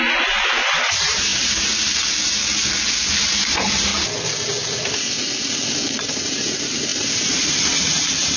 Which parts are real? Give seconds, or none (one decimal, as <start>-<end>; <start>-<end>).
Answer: 1.3-3.1; 3.9-6.2